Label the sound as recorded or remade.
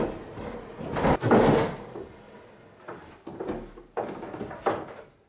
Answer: recorded